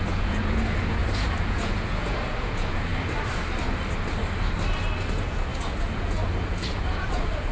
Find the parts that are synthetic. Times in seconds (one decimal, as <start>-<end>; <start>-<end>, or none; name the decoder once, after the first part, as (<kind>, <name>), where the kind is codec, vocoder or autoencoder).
0.0-2.9 (vocoder, Vocos); 5.1-7.5